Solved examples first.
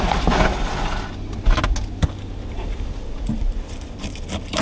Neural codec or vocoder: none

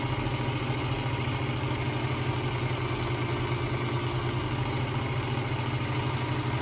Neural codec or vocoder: none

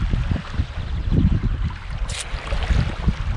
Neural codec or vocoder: none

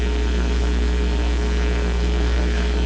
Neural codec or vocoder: codec, SNAC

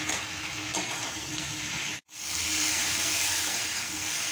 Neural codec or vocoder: codec, SNAC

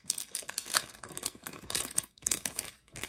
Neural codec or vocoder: codec, SNAC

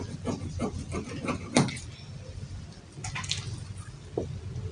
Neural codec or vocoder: none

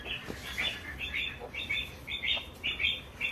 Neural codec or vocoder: none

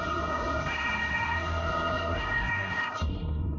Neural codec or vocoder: codec, SNAC